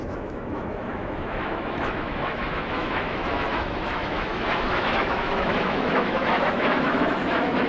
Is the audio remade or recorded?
remade